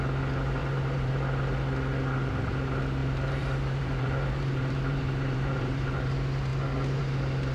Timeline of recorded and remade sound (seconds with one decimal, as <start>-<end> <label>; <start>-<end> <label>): 0.0-0.6 recorded; 0.6-1.1 remade; 1.1-3.0 recorded; 3.0-6.1 remade; 6.1-7.5 recorded